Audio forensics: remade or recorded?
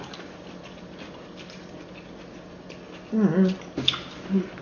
recorded